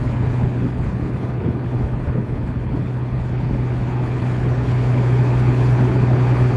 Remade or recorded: remade